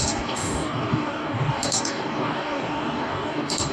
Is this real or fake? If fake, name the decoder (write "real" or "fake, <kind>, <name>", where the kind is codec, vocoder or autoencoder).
fake, codec, DAC